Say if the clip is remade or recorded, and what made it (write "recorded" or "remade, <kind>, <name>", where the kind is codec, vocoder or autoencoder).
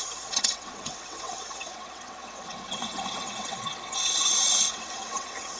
remade, vocoder, WaveNeXt